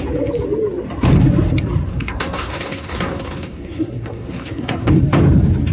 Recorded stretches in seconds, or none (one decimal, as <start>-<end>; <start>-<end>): 0.0-1.9; 4.9-5.7